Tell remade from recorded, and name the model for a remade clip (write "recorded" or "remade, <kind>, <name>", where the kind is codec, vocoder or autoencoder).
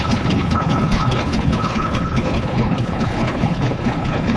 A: remade, codec, HILCodec